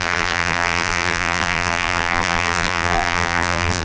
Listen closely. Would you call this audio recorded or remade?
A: remade